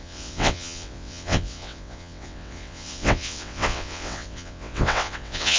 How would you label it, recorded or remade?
remade